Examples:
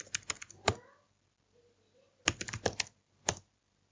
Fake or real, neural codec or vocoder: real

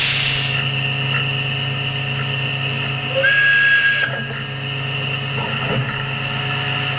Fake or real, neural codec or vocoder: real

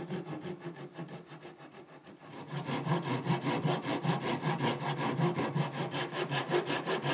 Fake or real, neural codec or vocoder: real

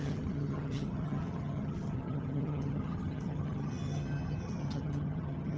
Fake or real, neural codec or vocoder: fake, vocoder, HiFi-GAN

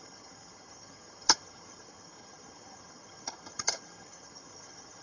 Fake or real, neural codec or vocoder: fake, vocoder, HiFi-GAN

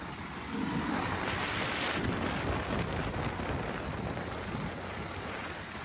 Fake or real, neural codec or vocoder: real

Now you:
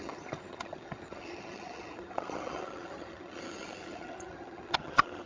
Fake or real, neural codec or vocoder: fake, vocoder, HiFi-GAN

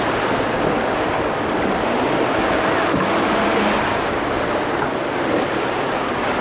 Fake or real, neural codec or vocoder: real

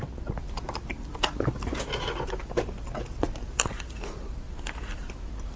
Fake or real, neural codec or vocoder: real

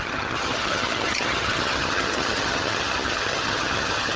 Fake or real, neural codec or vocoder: fake, vocoder, HiFi-GAN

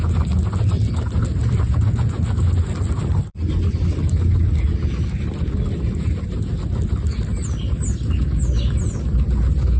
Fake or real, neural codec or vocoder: real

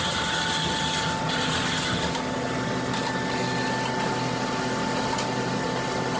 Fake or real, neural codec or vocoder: real